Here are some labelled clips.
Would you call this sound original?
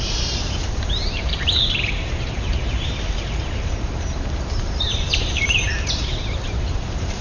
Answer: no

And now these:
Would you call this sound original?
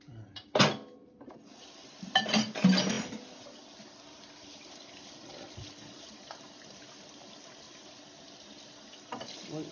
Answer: yes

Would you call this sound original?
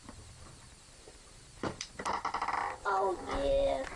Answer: no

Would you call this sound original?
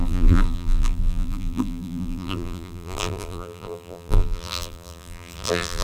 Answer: no